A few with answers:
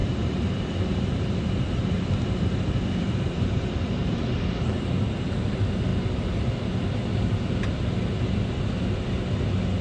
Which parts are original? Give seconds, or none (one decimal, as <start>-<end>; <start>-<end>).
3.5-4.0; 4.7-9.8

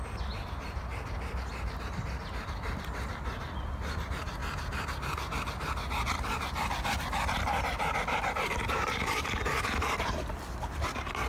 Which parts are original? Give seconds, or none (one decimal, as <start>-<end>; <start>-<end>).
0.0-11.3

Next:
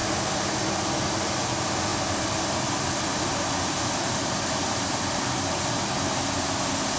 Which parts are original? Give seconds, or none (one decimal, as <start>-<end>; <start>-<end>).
0.0-7.0